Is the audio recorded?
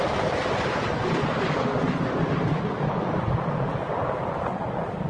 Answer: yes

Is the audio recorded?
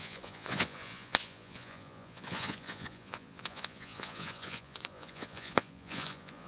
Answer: no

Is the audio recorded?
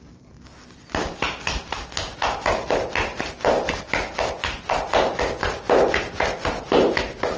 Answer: yes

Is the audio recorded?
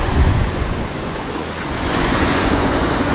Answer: no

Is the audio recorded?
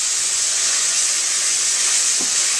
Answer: no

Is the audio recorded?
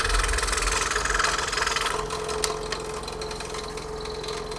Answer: yes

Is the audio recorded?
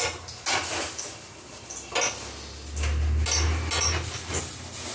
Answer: yes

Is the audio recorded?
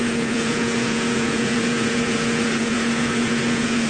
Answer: no